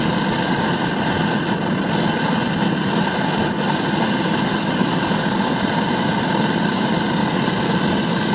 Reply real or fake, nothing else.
real